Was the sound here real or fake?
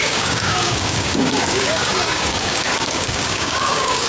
fake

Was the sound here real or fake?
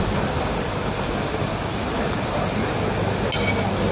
real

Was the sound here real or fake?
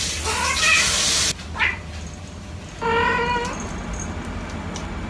real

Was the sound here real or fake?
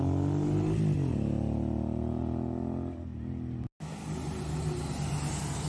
real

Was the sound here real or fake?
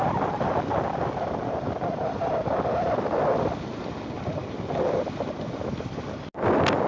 real